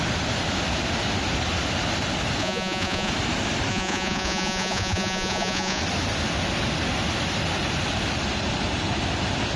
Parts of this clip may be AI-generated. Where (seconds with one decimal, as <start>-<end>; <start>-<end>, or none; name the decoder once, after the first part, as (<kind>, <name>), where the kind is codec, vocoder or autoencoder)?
2.4-3.1 (vocoder, Vocos); 3.7-5.8